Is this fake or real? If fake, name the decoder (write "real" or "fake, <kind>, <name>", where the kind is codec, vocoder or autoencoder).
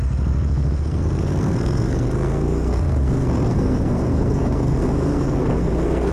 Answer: fake, codec, SNAC